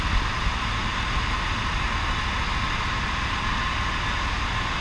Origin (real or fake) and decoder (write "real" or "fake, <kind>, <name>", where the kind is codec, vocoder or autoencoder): real